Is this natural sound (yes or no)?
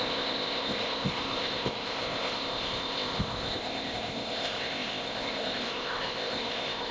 no